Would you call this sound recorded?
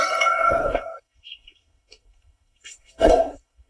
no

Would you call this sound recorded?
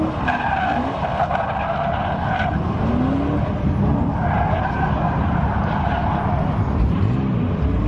yes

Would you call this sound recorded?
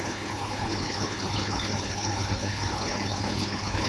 no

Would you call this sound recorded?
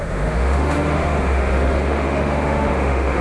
no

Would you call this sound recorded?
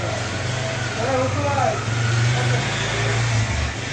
yes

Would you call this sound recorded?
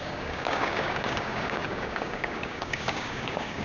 no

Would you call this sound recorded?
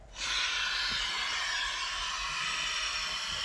yes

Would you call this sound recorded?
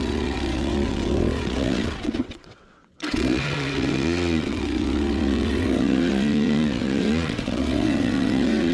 no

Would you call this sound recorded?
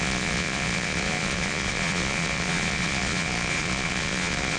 no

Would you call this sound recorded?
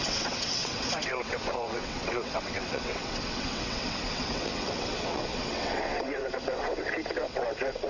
no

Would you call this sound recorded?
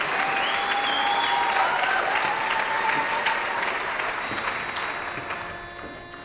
yes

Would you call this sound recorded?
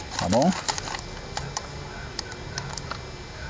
yes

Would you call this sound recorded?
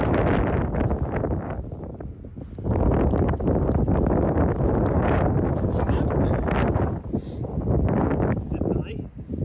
yes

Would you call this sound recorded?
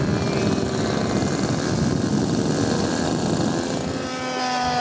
yes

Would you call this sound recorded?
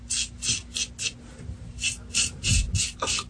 yes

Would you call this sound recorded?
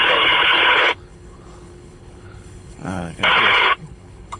no